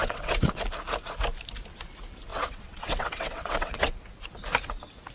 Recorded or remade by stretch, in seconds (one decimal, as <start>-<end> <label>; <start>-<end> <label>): 0.0-0.6 remade; 0.6-2.3 recorded; 2.3-4.0 remade; 4.0-5.1 recorded